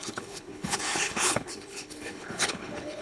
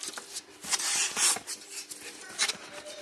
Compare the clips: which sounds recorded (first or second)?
second